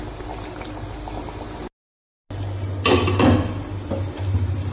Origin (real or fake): real